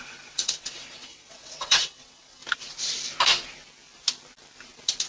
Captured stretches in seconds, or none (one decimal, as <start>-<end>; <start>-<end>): 2.4-5.1